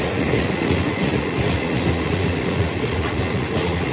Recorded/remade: remade